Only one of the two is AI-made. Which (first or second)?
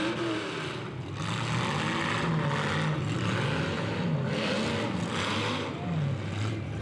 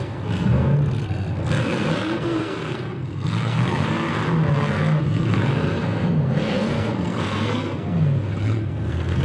second